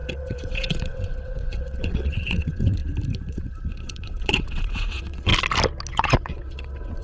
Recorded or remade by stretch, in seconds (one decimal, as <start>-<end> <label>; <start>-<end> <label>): 0.0-2.8 remade; 2.8-3.3 recorded; 3.3-5.3 remade; 5.3-5.9 recorded; 5.9-7.0 remade